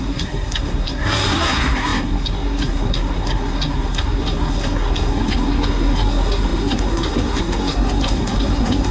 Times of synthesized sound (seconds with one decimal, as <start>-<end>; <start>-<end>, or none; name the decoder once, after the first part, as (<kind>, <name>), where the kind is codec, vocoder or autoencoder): 0.0-8.9 (codec, SNAC)